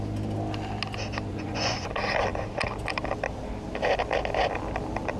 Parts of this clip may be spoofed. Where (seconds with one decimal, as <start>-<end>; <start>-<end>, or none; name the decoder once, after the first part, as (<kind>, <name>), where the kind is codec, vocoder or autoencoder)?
1.3-1.9 (vocoder, Vocos)